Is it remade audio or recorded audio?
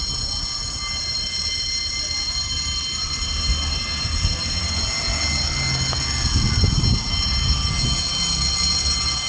recorded